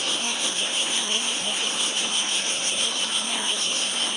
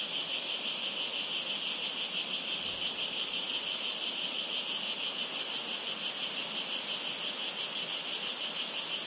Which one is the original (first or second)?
second